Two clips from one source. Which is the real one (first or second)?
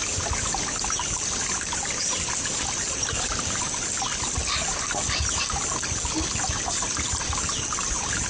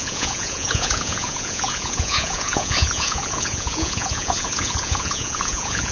first